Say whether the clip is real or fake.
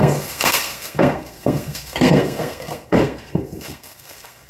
fake